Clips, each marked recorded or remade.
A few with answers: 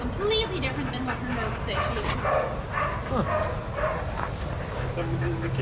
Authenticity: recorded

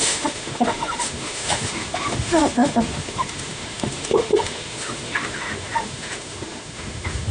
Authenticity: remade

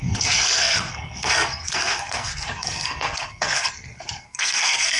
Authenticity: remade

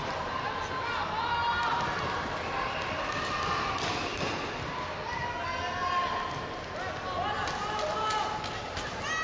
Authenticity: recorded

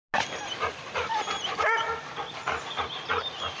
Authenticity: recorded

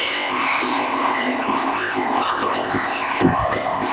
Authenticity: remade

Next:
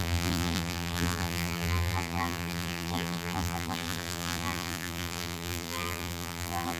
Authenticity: remade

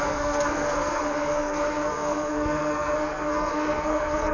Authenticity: remade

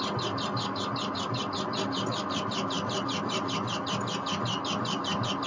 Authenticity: recorded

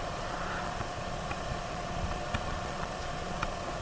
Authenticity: remade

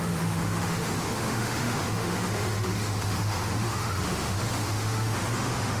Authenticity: remade